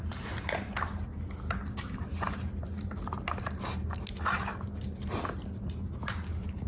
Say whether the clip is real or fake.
real